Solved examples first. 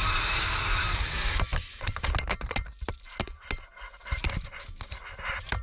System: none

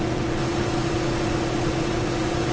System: vocoder, Vocos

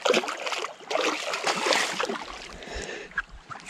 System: none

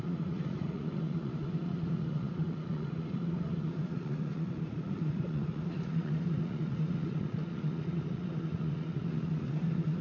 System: vocoder, Vocos